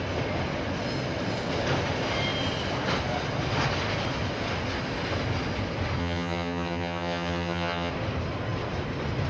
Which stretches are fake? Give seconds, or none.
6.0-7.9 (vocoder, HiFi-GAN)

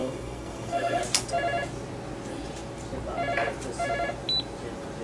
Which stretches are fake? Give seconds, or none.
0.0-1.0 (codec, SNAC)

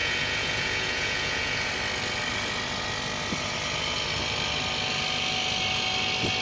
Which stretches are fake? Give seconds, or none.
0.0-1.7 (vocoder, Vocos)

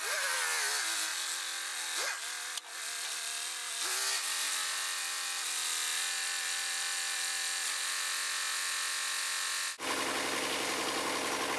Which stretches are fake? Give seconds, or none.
none

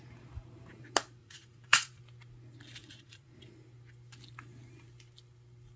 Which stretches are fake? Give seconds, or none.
1.2-2.0 (vocoder, Vocos); 2.8-3.4

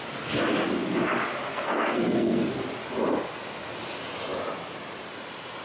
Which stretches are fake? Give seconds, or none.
1.5-2.5 (codec, SNAC)

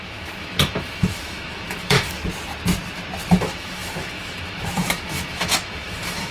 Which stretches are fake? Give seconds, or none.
0.0-2.2 (autoencoder, DAC-VAE); 3.3-6.3